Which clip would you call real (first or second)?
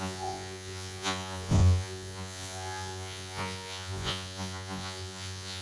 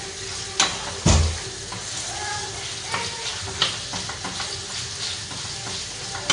second